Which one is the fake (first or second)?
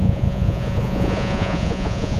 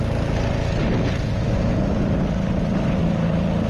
first